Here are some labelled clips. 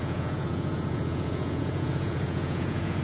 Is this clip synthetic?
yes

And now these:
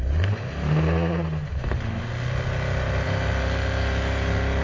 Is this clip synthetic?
no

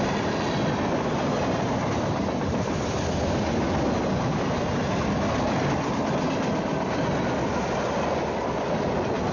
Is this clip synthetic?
no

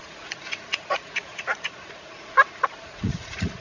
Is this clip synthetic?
yes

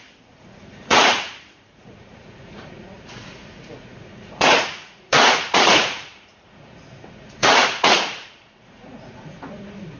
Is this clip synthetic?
yes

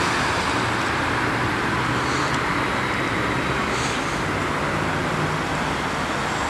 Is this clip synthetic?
no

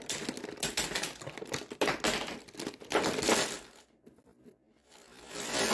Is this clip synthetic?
no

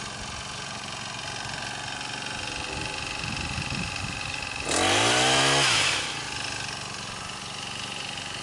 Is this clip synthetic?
no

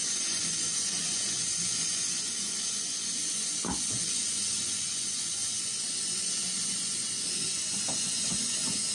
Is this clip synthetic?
yes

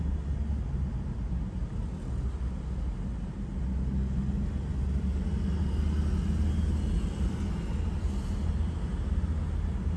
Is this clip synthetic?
no